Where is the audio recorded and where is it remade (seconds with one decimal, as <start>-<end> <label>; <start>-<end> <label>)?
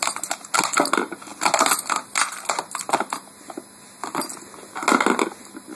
0.0-5.8 recorded